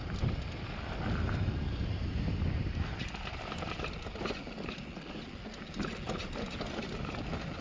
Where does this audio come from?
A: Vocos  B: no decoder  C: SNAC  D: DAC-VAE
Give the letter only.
B